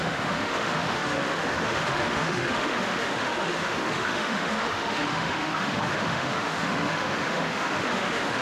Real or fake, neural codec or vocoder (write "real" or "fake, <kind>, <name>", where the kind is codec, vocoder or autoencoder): fake, autoencoder, DAC-VAE